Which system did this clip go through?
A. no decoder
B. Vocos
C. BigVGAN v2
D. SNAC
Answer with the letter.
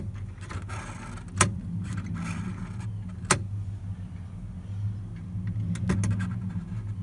A